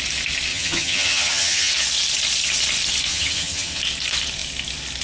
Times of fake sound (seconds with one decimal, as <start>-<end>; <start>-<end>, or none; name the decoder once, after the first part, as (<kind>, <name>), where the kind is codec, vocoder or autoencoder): 0.5-1.7 (vocoder, HiFi-GAN); 3.1-3.8